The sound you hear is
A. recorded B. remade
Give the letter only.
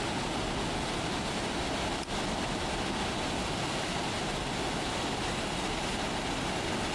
A